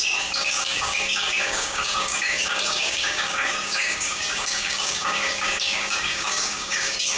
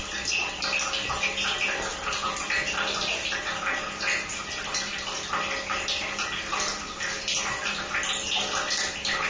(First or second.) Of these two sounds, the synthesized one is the first